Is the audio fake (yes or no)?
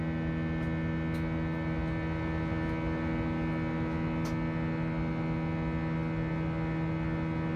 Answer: no